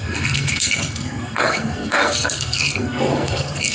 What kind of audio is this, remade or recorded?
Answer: remade